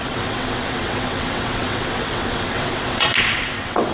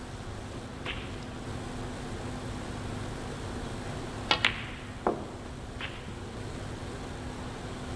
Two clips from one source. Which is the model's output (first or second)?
first